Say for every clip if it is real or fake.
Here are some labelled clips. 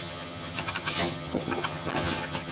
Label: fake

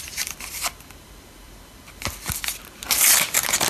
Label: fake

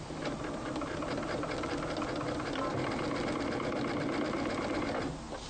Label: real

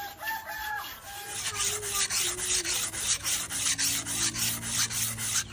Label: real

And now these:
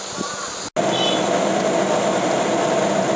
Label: real